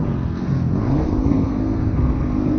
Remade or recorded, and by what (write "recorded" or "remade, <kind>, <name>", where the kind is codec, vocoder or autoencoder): remade, codec, SNAC